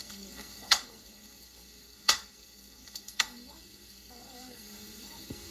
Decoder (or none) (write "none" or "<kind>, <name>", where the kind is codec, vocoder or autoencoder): codec, SNAC